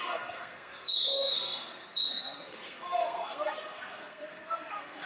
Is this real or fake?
fake